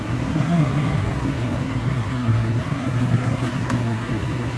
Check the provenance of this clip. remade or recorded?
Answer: remade